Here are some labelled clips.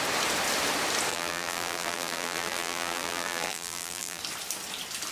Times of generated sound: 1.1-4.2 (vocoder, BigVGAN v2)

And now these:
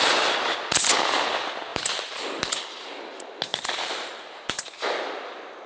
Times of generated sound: 1.7-2.6 (vocoder, BigVGAN v2); 3.5-4.5

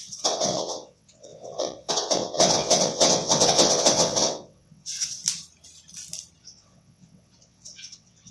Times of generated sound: 0.0-5.2 (vocoder, WaveNeXt); 6.4-8.3

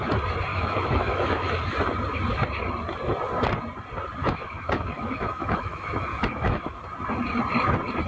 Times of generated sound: 0.5-1.5 (autoencoder, DAC-VAE); 4.2-6.8

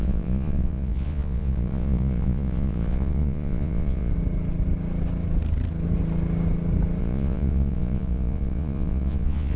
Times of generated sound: 0.0-4.1 (vocoder, Vocos); 7.0-9.6

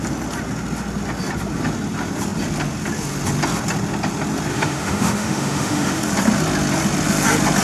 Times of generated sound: 4.5-6.0 (autoencoder, DAC-VAE)

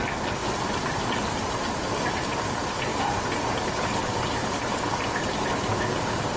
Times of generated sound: 0.4-2.1 (vocoder, BigVGAN v2); 2.9-6.4

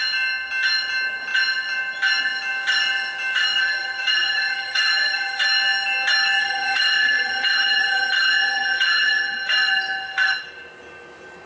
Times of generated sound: 3.6-5.4 (vocoder, HiFi-GAN); 6.4-9.5